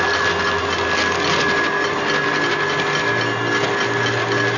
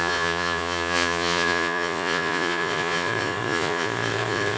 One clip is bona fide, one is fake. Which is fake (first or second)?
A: second